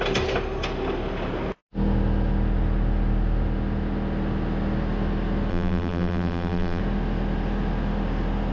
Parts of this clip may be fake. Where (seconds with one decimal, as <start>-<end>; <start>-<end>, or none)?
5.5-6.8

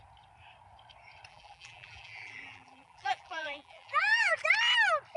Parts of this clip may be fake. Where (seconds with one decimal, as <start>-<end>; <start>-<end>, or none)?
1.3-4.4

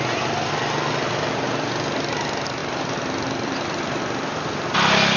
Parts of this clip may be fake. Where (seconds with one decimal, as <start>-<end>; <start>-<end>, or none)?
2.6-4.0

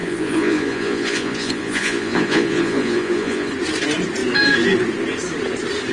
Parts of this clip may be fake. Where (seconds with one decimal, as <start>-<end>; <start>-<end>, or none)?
0.0-3.5

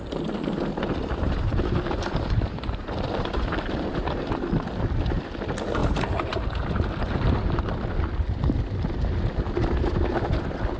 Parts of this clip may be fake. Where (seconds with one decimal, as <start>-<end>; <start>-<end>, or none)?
0.9-3.9; 5.8-7.7

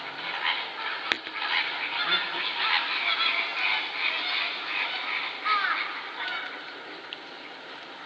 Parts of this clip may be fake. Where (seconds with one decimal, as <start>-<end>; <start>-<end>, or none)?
none